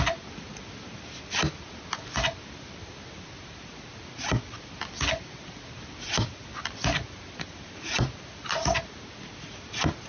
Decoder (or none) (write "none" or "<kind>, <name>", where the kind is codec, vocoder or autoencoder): none